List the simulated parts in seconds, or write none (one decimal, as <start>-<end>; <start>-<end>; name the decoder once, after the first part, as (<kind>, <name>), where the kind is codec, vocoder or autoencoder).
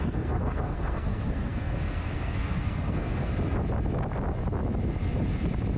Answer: 0.0-3.3 (codec, SNAC)